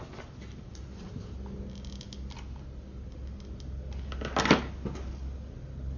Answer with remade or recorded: recorded